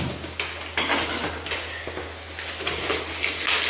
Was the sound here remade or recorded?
recorded